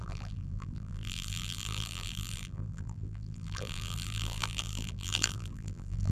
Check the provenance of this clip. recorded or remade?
remade